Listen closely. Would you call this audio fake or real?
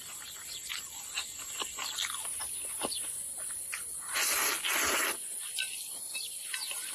real